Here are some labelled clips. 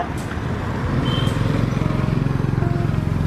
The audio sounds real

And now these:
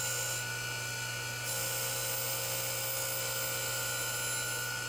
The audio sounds real